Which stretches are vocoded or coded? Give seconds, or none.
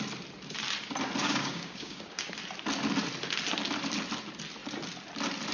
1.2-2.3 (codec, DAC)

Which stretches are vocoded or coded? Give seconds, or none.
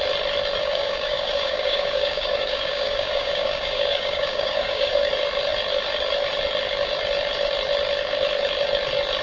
0.6-5.1 (codec, DAC)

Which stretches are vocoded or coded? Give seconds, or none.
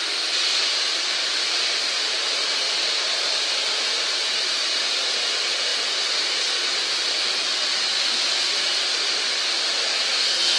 none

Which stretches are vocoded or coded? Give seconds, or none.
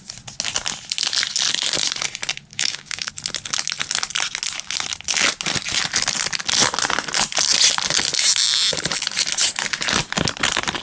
2.5-3.1 (codec, DAC)